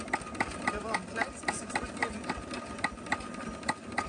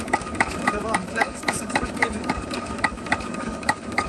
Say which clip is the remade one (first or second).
second